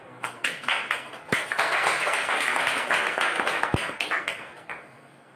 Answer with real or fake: fake